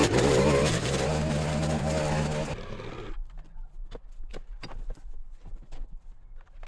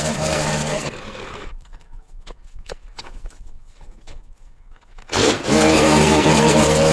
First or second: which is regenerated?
second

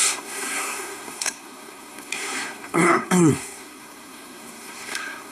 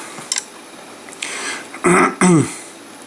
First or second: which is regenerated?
first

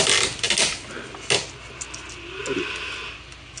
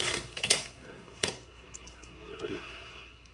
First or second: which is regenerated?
second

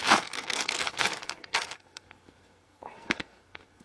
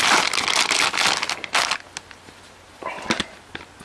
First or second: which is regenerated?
first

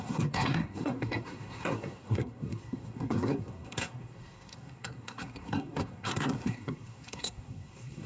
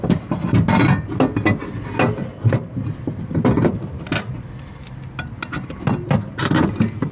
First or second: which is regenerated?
first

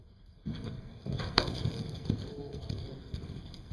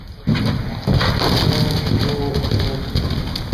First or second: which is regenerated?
first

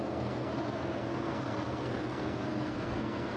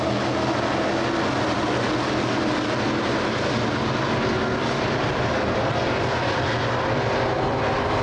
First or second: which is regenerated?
first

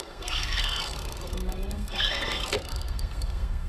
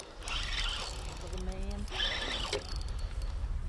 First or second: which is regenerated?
first